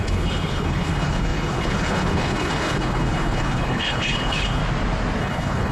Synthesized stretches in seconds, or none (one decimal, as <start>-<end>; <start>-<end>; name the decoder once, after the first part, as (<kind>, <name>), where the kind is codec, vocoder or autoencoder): 0.0-4.6 (codec, HILCodec); 5.2-5.7